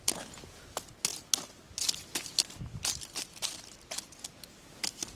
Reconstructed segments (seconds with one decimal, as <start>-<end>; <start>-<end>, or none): none